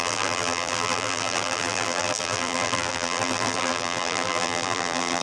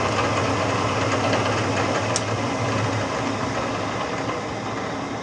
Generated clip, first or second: first